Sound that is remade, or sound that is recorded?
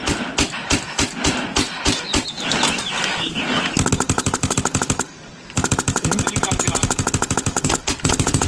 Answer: recorded